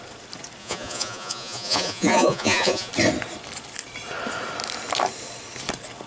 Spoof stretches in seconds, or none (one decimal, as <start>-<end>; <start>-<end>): 0.6-2.9